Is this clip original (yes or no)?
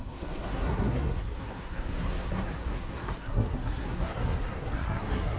no